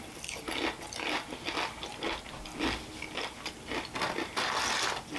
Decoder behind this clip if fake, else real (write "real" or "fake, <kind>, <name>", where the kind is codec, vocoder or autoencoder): real